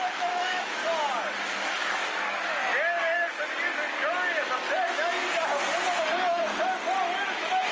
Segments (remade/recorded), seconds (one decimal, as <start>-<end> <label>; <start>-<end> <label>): 0.0-0.8 remade; 0.8-1.4 recorded; 1.4-2.7 remade; 2.7-7.3 recorded; 7.3-7.7 remade